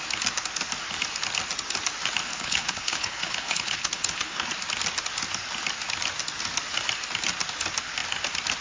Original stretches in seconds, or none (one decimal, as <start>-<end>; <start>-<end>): 0.0-2.3; 4.5-8.6